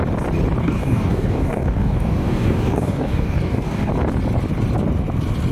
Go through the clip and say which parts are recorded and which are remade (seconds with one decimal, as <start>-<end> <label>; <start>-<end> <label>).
0.0-0.6 recorded; 0.6-3.9 remade; 3.9-5.5 recorded